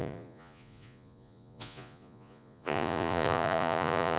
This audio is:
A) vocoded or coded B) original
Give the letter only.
A